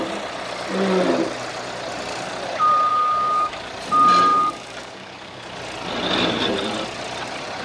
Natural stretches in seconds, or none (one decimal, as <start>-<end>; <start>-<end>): 0.0-2.9; 3.7-4.3; 5.4-7.6